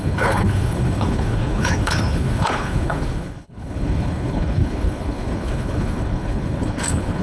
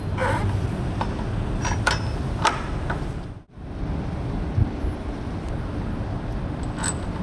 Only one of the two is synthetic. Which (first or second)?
first